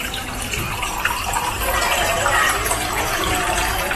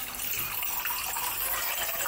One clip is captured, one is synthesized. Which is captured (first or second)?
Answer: second